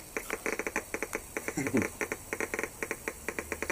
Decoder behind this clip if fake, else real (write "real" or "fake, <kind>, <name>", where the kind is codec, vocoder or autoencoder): real